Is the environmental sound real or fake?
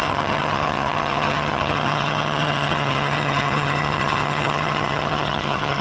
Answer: fake